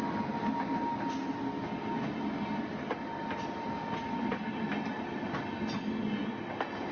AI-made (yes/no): no